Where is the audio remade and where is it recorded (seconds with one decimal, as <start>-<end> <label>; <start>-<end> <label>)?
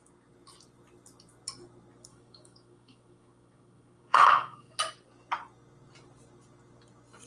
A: 0.0-2.1 recorded; 2.1-4.8 remade; 4.8-7.3 recorded